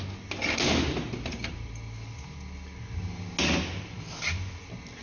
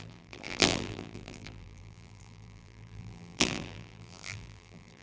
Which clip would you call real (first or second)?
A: first